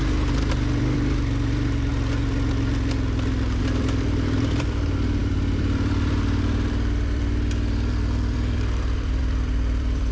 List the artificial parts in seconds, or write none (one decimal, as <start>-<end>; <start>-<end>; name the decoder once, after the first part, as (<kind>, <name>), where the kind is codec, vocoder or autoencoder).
0.0-1.9 (vocoder, BigVGAN v2); 3.6-10.1